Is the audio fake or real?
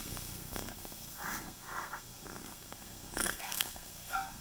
fake